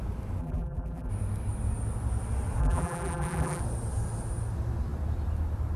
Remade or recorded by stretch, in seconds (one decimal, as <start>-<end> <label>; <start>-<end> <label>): 0.0-0.4 recorded; 0.4-1.1 remade; 1.1-2.6 recorded; 2.6-3.6 remade; 3.6-5.8 recorded